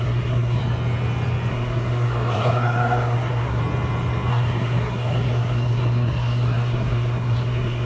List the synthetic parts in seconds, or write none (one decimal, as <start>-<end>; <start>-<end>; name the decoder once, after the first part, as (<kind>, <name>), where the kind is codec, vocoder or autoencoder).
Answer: 0.0-0.6 (codec, SNAC); 1.5-3.6; 4.3-7.9